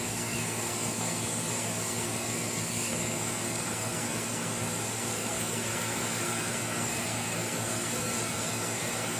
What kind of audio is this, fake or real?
fake